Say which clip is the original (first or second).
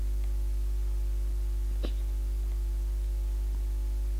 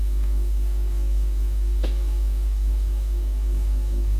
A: first